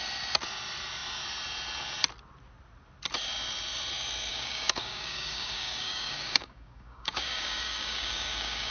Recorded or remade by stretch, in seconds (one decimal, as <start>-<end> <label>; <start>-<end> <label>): 0.0-4.3 recorded; 4.3-8.7 remade